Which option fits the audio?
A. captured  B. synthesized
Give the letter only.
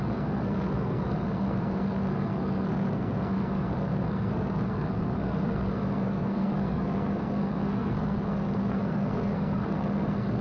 B